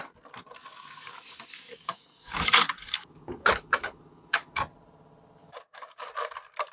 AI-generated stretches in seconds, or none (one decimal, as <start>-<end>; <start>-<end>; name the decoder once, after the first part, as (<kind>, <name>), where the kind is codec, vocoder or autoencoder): 0.6-4.6 (codec, DAC); 5.4-6.1